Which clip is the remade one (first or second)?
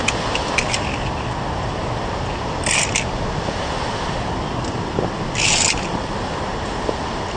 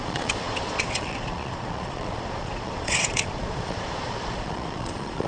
second